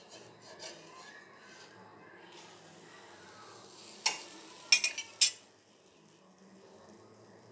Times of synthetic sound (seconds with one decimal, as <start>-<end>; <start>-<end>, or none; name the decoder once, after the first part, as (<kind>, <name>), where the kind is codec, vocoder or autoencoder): none